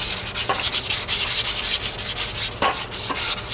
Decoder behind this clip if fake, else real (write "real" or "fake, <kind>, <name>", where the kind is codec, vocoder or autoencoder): real